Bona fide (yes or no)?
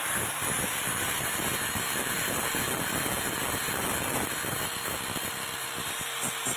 yes